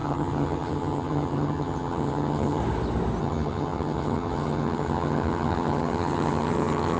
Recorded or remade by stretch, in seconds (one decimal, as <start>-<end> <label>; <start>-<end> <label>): 0.0-2.6 remade; 2.6-3.2 recorded; 3.2-7.0 remade